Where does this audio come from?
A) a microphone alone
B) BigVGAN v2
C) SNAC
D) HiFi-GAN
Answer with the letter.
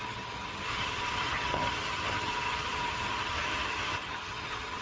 D